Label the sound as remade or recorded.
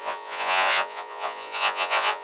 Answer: remade